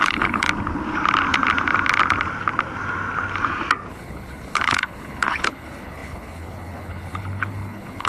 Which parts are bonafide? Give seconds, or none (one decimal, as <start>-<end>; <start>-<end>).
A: 0.5-3.9